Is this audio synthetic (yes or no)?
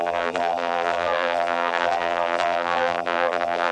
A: yes